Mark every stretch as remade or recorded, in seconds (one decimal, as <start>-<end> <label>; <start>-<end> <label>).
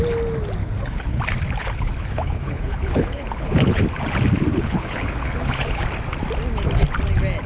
0.0-0.6 recorded; 0.6-1.2 remade; 1.2-1.6 recorded; 1.6-3.8 remade; 3.8-4.5 recorded; 4.5-5.8 remade; 5.8-7.5 recorded